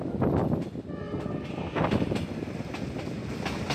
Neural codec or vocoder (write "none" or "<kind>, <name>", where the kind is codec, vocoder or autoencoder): none